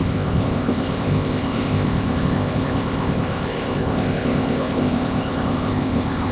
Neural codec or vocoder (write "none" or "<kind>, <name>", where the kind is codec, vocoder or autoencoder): codec, ZipCodec